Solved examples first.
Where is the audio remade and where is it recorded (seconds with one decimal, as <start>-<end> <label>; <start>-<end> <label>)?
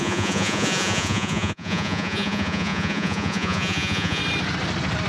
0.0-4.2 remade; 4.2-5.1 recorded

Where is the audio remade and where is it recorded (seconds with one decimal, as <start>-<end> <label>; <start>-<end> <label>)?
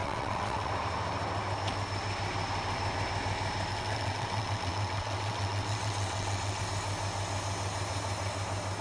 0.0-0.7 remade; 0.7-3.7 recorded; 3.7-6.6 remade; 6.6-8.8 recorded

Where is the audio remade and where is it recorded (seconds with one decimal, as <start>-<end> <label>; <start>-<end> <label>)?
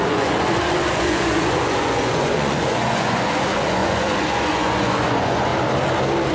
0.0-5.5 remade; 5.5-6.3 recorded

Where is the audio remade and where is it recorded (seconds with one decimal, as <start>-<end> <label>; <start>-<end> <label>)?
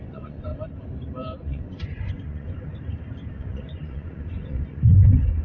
0.0-0.5 remade; 0.5-1.4 recorded; 1.4-2.7 remade; 2.7-3.3 recorded; 3.3-5.4 remade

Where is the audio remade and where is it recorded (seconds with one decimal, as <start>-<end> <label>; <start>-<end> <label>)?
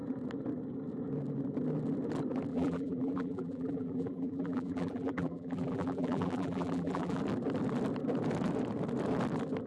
0.0-2.5 recorded; 2.5-7.2 remade; 7.2-9.7 recorded